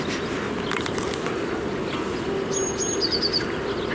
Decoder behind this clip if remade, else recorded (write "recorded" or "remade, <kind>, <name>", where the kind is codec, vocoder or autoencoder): recorded